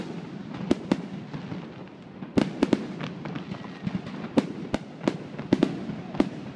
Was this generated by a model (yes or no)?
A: no